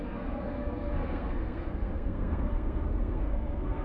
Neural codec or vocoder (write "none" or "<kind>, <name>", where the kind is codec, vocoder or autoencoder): codec, SNAC